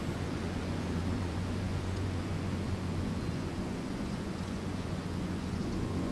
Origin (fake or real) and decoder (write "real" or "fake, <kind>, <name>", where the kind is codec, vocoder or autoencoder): fake, vocoder, Vocos